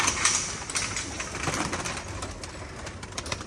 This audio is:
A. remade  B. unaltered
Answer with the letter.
B